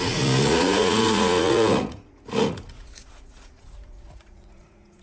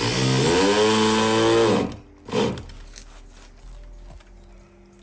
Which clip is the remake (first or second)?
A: first